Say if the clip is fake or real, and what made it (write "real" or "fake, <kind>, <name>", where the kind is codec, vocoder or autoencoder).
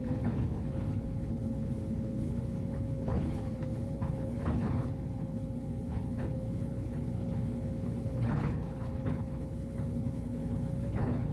fake, codec, HILCodec